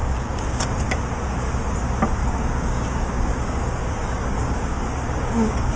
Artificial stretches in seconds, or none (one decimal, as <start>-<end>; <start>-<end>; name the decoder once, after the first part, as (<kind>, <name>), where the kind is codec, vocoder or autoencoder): 0.0-0.6 (codec, DAC); 2.2-5.8

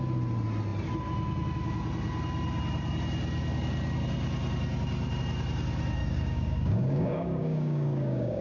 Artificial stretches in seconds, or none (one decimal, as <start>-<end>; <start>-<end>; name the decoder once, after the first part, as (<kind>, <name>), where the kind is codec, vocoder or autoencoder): 6.0-8.4 (codec, DAC)

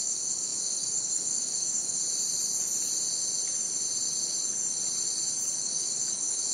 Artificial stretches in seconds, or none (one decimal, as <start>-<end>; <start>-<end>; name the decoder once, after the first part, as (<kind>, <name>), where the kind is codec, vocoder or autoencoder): 0.0-2.0 (codec, DAC); 5.6-6.5

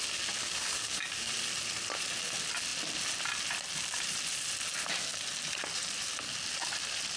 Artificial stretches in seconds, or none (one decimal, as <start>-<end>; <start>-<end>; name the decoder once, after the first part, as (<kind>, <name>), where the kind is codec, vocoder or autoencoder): 0.4-1.3 (codec, DAC)